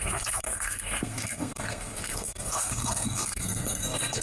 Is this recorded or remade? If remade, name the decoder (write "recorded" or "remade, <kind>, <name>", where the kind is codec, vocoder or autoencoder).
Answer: remade, codec, SNAC